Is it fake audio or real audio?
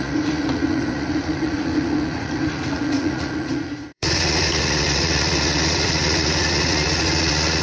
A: fake